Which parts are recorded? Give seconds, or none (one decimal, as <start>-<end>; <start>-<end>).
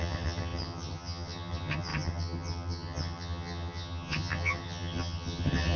none